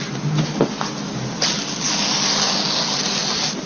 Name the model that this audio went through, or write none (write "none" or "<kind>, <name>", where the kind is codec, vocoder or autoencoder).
none